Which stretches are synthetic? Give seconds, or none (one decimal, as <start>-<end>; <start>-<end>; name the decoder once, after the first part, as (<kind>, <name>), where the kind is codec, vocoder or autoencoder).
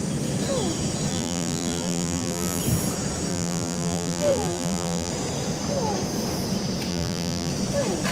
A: 1.1-2.6 (vocoder, BigVGAN v2); 3.3-5.1; 6.9-7.5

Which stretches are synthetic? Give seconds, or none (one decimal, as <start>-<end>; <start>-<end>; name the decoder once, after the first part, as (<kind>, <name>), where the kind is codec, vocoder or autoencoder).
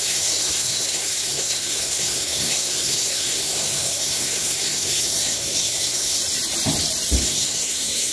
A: 0.0-6.2 (codec, SNAC); 7.2-8.1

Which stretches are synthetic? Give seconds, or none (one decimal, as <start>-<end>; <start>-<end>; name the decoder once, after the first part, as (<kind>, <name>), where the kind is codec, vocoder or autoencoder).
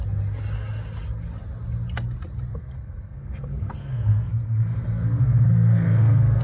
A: 2.5-6.4 (codec, SNAC)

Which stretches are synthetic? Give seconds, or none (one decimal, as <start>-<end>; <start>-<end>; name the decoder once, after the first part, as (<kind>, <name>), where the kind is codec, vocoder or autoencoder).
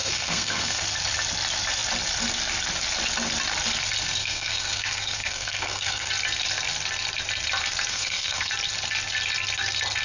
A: 0.0-0.8 (codec, SNAC); 4.2-6.1; 7.9-8.5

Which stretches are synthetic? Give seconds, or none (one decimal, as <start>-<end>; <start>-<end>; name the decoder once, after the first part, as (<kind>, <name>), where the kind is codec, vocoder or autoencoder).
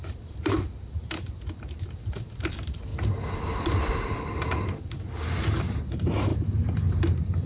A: 0.0-2.9 (vocoder, BigVGAN v2); 5.6-7.5